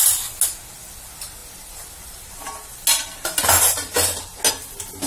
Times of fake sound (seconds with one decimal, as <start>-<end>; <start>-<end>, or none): none

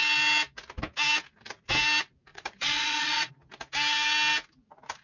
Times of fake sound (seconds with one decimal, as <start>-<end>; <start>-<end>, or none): 2.3-3.3

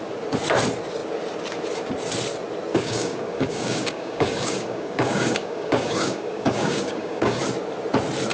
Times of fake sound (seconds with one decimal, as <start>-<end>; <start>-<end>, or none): 2.7-7.4